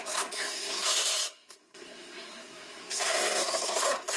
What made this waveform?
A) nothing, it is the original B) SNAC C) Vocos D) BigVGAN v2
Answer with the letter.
B